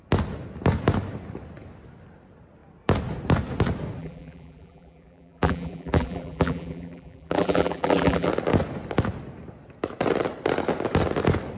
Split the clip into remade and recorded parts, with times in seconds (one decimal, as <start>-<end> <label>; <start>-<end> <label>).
0.0-4.0 recorded; 4.0-8.3 remade; 8.3-11.6 recorded